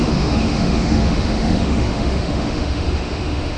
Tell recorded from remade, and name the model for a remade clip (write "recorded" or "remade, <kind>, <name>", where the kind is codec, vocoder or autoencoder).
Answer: remade, autoencoder, DAC-VAE